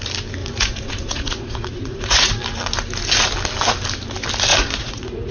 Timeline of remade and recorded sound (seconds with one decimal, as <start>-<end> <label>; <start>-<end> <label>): 0.0-0.4 recorded; 0.4-2.4 remade; 2.4-4.5 recorded; 4.5-5.3 remade